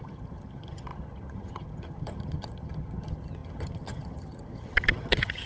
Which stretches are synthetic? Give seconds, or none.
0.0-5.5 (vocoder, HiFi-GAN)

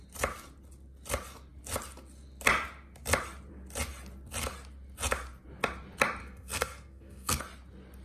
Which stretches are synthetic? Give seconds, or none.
6.2-7.4 (codec, SNAC)

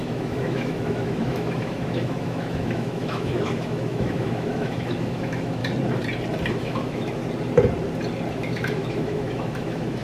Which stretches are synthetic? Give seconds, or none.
0.0-5.6 (autoencoder, DAC-VAE); 6.5-7.2; 8.3-10.0